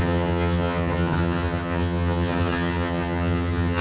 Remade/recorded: remade